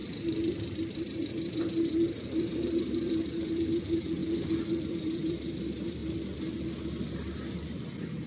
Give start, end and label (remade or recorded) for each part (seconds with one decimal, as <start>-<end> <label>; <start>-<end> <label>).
0.0-4.2 remade; 4.2-4.9 recorded; 4.9-6.0 remade; 6.0-8.3 recorded